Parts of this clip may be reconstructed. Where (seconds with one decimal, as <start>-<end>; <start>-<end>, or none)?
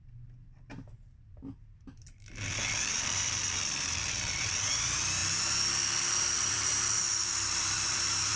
0.0-5.2; 6.2-8.4